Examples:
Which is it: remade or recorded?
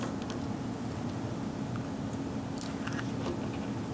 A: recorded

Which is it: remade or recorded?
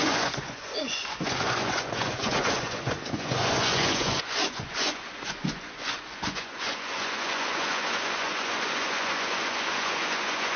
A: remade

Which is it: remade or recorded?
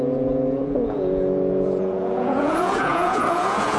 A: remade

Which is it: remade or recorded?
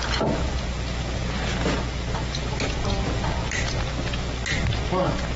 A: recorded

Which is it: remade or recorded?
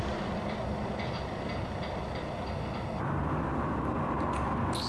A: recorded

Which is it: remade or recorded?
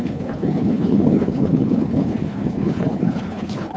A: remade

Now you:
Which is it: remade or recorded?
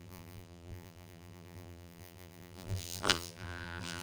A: remade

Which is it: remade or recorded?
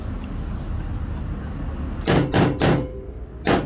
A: recorded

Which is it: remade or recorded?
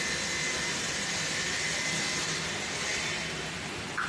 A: recorded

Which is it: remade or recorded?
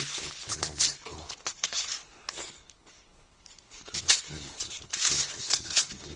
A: remade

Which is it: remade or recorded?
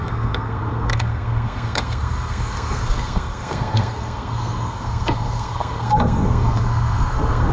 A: remade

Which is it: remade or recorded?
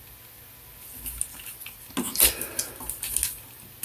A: recorded